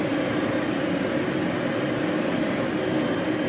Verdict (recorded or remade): recorded